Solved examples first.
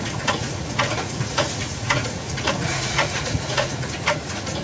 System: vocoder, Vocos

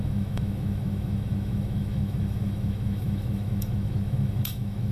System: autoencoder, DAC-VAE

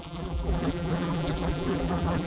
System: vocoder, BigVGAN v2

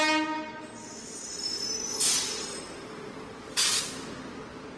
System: none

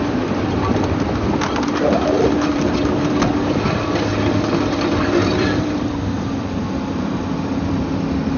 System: vocoder, BigVGAN v2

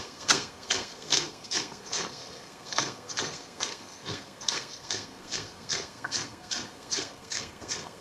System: codec, SNAC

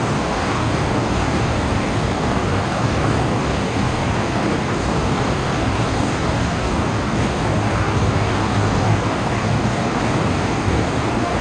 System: codec, DAC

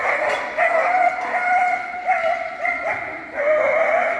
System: none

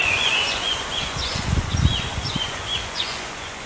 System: vocoder, Vocos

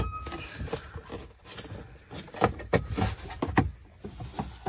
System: none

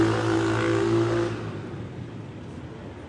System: none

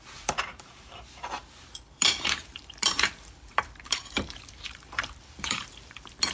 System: vocoder, BigVGAN v2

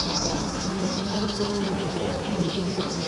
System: codec, SNAC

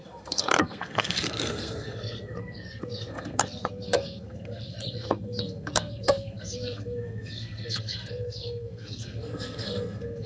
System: codec, SNAC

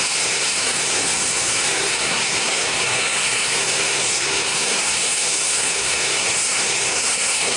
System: codec, SNAC